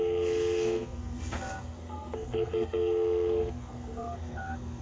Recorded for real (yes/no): no